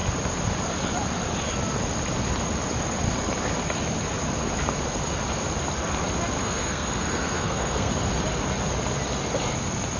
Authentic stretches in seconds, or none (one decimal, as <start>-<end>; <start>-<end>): 0.0-6.4; 7.9-10.0